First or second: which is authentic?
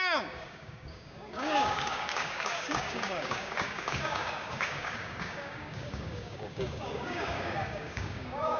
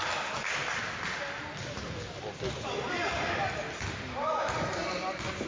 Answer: second